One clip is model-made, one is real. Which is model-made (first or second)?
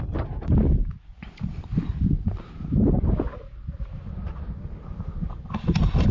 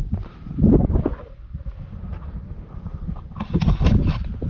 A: second